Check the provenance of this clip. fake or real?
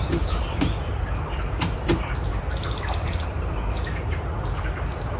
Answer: real